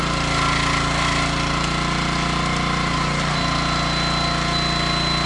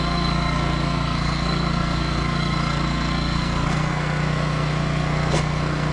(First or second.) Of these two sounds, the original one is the first